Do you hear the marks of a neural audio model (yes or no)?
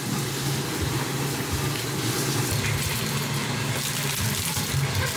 no